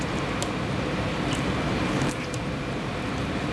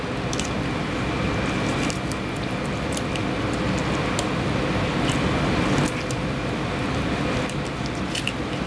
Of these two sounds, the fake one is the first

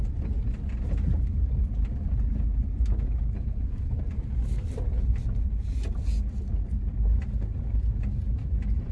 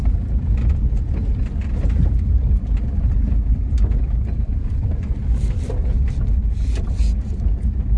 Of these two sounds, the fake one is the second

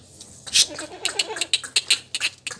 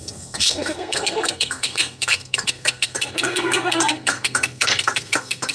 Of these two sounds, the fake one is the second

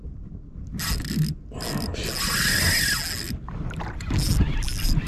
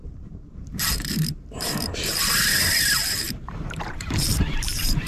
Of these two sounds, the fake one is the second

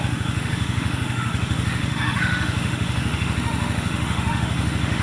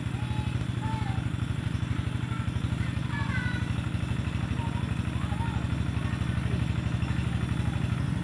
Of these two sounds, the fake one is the first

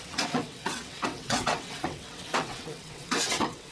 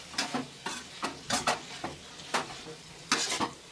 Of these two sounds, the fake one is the first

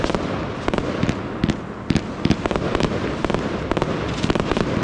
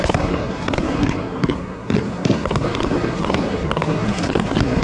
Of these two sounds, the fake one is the second